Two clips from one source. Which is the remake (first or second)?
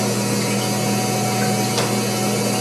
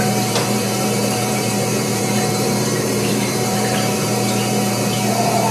second